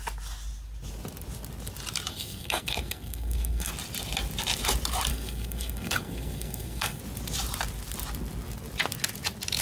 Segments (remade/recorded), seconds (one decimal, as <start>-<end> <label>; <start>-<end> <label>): 0.0-2.1 recorded; 2.1-3.7 remade; 3.7-5.1 recorded; 5.1-7.0 remade; 7.0-9.6 recorded